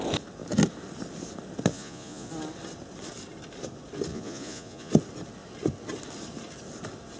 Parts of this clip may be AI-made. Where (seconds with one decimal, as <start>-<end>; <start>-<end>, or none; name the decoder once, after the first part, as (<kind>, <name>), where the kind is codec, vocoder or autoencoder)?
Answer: 1.7-2.3 (vocoder, Vocos); 4.1-4.9